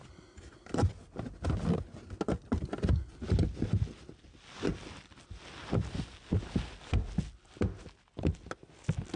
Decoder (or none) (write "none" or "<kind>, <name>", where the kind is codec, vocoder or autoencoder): none